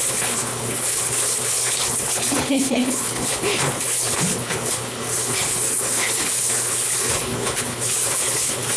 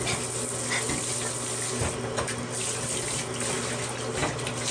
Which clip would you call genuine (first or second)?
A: second